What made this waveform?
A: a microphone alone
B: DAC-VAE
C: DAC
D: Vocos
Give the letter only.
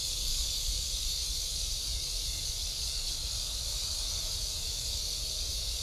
C